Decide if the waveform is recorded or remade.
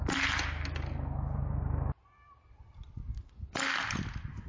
recorded